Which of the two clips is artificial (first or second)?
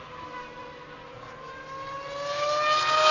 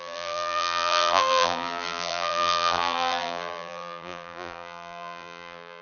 second